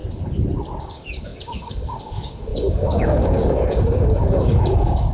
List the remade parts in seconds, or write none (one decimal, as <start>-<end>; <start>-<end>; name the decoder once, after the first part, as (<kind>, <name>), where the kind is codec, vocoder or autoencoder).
0.8-5.1 (codec, DAC)